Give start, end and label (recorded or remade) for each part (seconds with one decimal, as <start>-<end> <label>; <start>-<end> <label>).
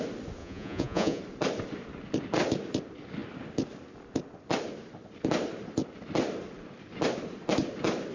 0.0-0.4 recorded; 0.4-1.2 remade; 1.2-8.1 recorded